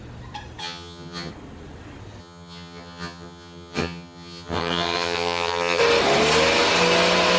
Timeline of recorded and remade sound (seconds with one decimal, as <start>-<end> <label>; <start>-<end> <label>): 0.0-0.6 recorded; 0.6-1.3 remade; 1.3-2.2 recorded; 2.2-5.8 remade; 5.8-7.4 recorded